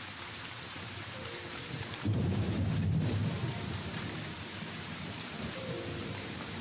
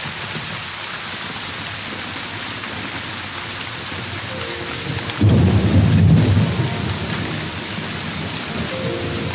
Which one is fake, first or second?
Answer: first